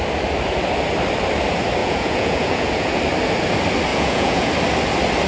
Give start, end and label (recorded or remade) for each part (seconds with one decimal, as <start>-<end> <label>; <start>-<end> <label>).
0.0-1.8 recorded; 1.8-3.0 remade; 3.0-3.9 recorded; 3.9-4.5 remade; 4.5-5.3 recorded